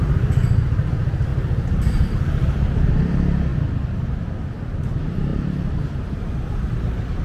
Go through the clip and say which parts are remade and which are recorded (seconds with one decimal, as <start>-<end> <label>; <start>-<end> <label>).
0.0-1.3 recorded; 1.3-2.8 remade; 2.8-5.3 recorded; 5.3-6.1 remade; 6.1-7.2 recorded